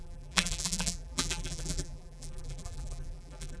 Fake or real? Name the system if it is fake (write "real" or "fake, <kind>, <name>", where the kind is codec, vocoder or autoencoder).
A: fake, vocoder, BigVGAN v2